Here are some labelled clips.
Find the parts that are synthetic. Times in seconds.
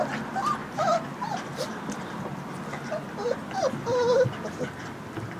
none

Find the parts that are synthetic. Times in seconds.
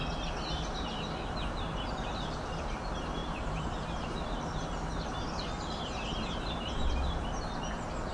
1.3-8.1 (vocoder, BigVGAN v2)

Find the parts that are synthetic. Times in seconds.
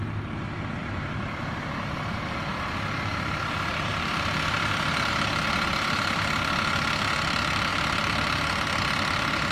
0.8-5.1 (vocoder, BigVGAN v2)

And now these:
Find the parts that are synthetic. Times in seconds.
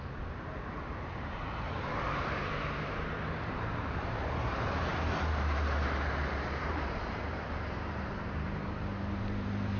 0.0-4.9 (vocoder, BigVGAN v2); 6.7-9.8